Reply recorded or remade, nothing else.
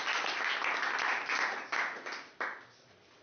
recorded